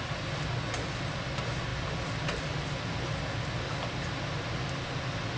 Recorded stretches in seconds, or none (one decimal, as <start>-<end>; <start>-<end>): 0.0-5.4